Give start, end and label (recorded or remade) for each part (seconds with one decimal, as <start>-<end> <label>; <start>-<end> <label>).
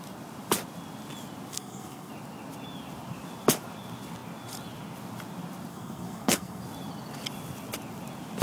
0.0-1.5 recorded; 1.5-2.1 remade; 2.1-5.7 recorded; 5.7-6.6 remade; 6.6-8.4 recorded